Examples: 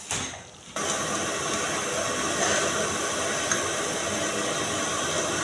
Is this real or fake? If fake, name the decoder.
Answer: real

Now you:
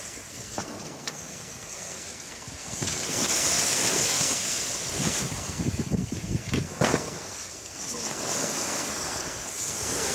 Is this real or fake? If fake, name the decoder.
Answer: fake, codec, SNAC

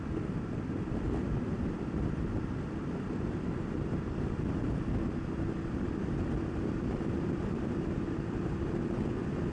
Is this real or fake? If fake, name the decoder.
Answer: fake, vocoder, BigVGAN v2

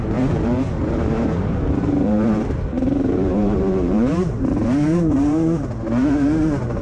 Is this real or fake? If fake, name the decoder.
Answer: fake, vocoder, BigVGAN v2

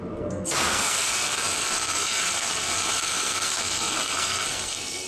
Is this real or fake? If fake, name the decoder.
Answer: fake, codec, SNAC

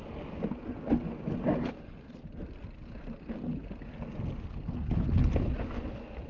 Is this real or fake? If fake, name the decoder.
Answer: real